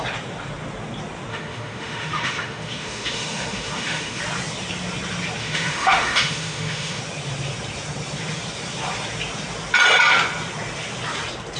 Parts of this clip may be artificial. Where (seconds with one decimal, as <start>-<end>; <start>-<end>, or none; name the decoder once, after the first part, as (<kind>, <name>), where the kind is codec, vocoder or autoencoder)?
1.3-4.2 (autoencoder, DAC-VAE); 5.4-7.0